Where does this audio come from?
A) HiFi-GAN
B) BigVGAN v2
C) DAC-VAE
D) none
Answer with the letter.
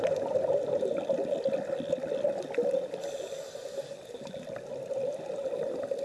D